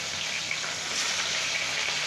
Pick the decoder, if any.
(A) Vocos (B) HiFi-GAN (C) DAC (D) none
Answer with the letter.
D